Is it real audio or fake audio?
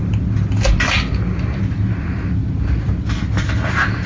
real